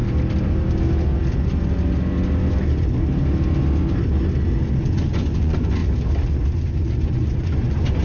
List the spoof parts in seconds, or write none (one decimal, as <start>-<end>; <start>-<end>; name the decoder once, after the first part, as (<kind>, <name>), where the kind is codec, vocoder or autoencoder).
4.8-5.8 (vocoder, Vocos); 6.6-8.0